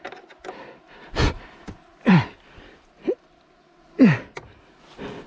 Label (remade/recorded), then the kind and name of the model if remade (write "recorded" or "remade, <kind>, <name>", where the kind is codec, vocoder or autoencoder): recorded